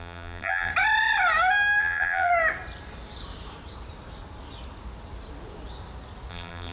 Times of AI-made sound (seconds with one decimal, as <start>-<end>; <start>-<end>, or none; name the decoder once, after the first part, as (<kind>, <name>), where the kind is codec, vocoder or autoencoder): 0.0-0.7 (vocoder, BigVGAN v2); 1.8-2.3; 6.3-6.7